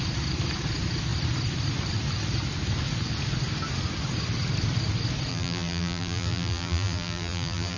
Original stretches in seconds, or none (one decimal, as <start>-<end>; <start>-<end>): 0.0-5.3